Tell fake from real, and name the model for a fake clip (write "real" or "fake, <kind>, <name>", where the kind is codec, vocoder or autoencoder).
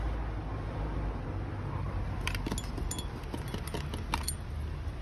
real